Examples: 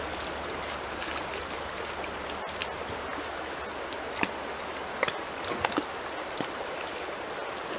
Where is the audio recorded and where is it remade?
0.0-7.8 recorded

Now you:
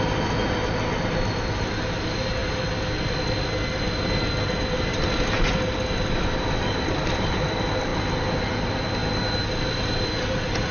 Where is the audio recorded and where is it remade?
0.0-10.7 recorded

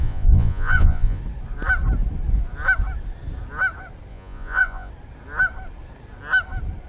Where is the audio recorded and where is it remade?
0.0-1.2 remade; 1.2-4.1 recorded; 4.1-4.9 remade; 4.9-6.9 recorded

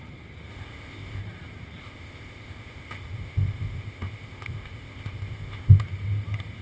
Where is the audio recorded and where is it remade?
0.0-0.5 recorded; 0.5-1.2 remade; 1.2-1.8 recorded; 1.8-5.8 remade; 5.8-6.6 recorded